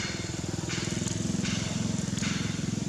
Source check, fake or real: real